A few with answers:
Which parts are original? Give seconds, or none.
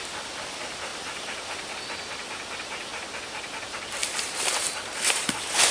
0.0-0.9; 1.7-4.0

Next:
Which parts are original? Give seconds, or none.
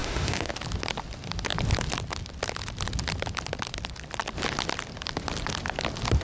0.5-6.2